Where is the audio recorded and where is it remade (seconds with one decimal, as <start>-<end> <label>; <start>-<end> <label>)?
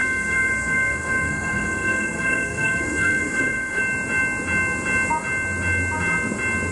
0.0-3.8 remade; 3.8-6.7 recorded